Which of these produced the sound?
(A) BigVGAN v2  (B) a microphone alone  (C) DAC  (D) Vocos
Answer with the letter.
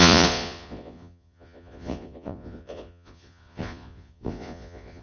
D